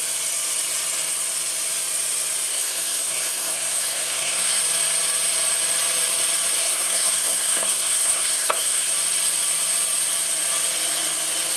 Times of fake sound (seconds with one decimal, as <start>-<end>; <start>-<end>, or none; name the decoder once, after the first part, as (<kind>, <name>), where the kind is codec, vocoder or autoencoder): 2.5-4.6 (codec, SNAC); 6.6-8.9